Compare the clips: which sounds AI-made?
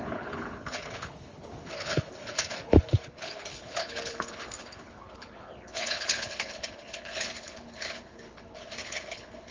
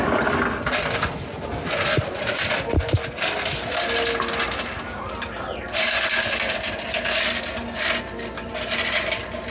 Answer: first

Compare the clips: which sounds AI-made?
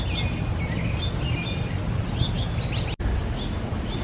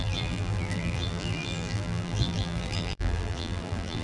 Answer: second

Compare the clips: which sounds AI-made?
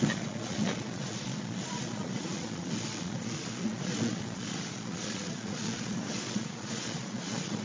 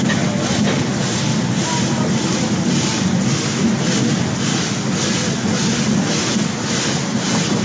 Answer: first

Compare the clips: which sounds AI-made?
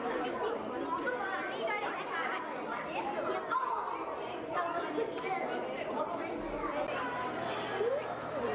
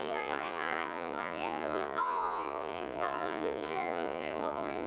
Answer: second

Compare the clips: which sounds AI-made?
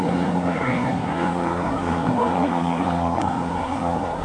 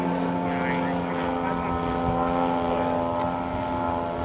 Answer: first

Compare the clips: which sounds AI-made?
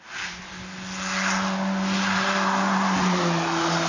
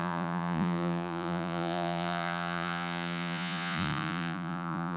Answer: second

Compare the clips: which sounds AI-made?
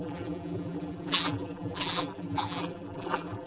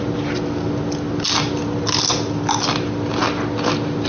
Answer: first